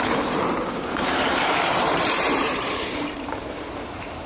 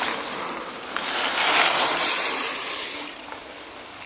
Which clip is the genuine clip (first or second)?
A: second